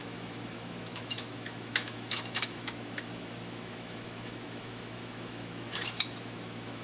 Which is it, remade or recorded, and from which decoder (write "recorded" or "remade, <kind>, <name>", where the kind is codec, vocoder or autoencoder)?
remade, autoencoder, DAC-VAE